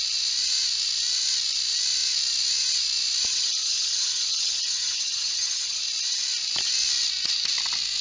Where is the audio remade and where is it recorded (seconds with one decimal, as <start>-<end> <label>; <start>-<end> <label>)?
0.0-3.3 recorded; 3.3-5.8 remade; 5.8-8.0 recorded

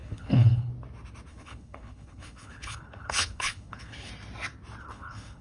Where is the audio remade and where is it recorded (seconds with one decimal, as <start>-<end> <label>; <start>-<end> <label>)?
0.0-0.7 remade; 0.7-1.3 recorded; 1.3-4.1 remade; 4.1-4.8 recorded; 4.8-5.4 remade